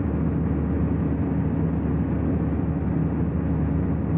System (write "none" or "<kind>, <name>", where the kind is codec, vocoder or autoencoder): none